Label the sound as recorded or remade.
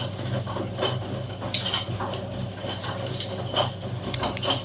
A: recorded